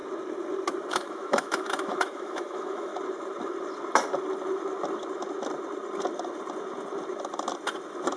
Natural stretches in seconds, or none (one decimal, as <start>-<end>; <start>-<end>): 0.0-0.9; 2.9-8.2